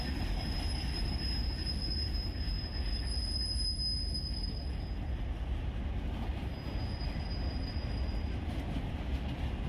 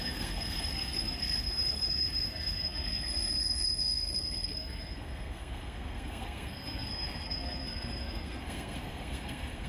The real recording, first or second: first